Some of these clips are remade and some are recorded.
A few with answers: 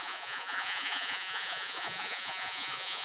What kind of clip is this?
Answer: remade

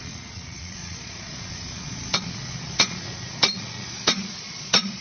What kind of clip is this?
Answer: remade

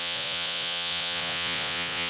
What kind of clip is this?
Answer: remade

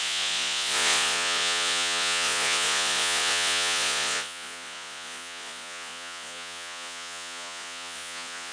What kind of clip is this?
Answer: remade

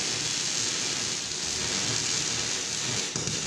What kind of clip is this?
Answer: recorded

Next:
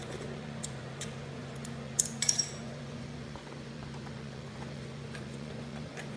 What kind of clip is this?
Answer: remade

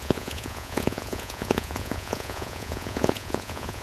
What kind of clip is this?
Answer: remade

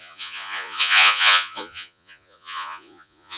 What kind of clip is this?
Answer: remade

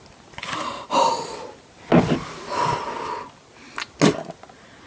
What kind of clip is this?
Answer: recorded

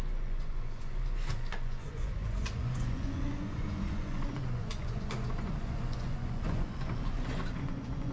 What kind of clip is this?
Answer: remade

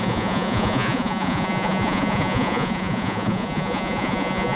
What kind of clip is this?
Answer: remade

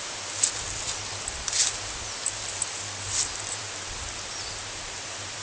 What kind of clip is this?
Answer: recorded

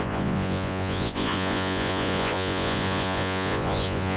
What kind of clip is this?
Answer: remade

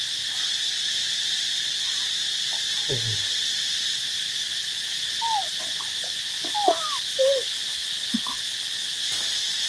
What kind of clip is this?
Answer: recorded